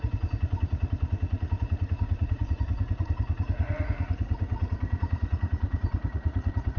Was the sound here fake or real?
fake